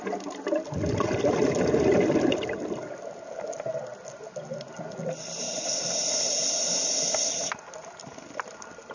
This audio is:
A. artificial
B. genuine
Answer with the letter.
B